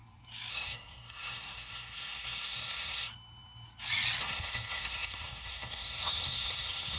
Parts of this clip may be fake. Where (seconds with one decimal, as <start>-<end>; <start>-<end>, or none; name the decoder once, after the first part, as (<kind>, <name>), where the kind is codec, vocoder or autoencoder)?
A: 0.5-3.1 (codec, SNAC); 4.2-7.0